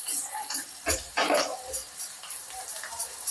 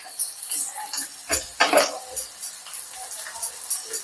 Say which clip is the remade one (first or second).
first